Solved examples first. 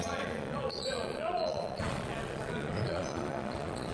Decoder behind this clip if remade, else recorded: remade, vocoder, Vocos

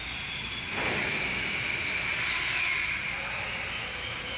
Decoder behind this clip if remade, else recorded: recorded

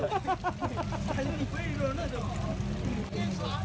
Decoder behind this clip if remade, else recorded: recorded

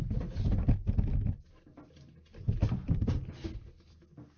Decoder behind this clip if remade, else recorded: recorded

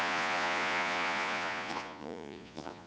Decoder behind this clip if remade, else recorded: remade, vocoder, Vocos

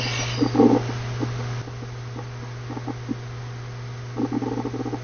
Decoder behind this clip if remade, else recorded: recorded